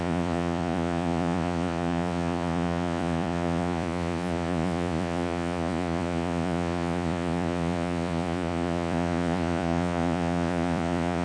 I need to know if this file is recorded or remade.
remade